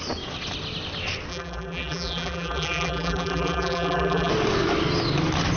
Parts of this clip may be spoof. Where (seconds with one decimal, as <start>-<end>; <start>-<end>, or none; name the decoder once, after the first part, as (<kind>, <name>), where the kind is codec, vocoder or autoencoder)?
1.3-4.3 (vocoder, BigVGAN v2)